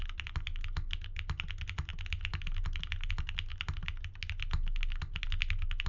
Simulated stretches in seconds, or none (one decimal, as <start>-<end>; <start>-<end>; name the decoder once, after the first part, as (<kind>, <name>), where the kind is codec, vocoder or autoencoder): none